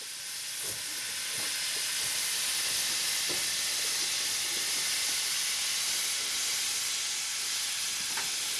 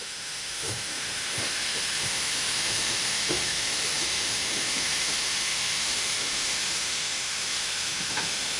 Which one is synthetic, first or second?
second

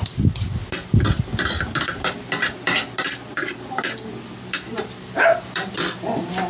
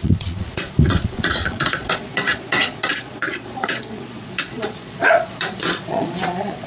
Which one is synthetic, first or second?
second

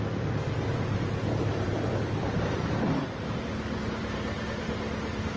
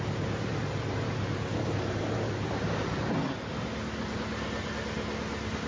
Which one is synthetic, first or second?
first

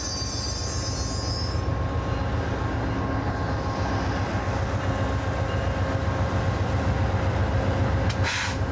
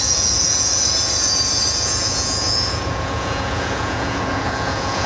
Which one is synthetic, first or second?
second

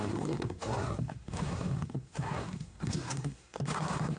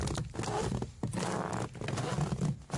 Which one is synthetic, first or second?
first